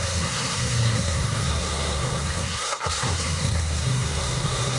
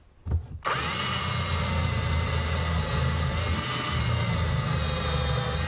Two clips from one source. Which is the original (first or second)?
second